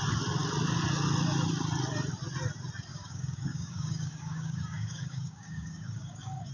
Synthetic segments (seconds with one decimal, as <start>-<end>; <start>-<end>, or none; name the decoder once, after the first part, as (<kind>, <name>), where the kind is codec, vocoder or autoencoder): 2.9-6.5 (codec, DAC)